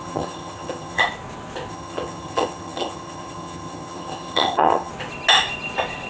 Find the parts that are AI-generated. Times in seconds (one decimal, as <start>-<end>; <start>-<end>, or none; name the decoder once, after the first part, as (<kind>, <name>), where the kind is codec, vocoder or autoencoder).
0.0-1.0 (vocoder, HiFi-GAN); 1.7-4.9